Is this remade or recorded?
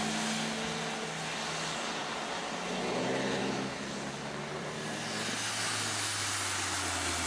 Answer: recorded